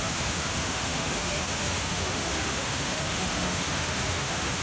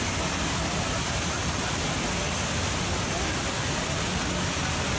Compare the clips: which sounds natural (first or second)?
second